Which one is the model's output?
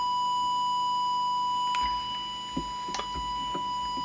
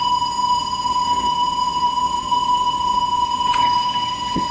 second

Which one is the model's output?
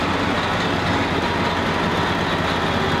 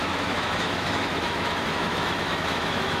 second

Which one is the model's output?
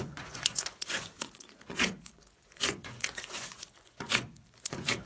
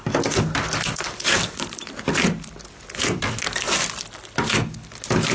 first